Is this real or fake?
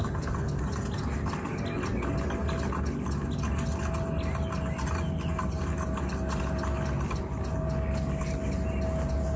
real